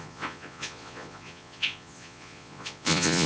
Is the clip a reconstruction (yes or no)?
yes